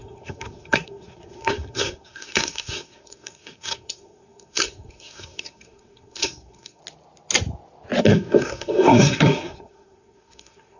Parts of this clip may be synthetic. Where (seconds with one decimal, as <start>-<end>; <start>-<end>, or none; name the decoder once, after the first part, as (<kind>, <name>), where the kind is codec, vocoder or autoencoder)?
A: 0.0-6.8 (codec, SNAC); 8.0-10.8